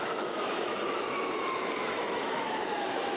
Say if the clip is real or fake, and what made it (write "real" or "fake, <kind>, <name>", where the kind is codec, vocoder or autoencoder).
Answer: fake, autoencoder, DAC-VAE